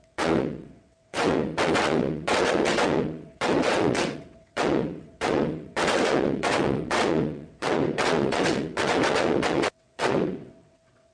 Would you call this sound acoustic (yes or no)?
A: no